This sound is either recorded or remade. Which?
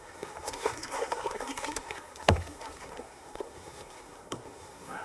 remade